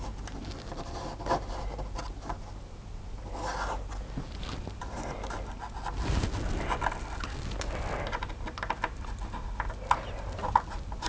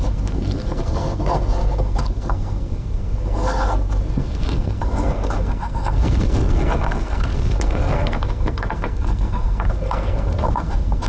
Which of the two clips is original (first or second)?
first